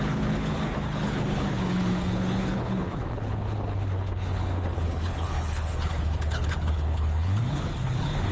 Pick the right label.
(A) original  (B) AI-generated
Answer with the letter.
B